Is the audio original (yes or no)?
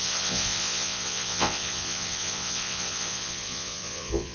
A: no